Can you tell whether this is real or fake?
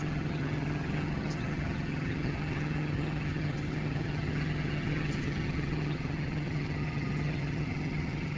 fake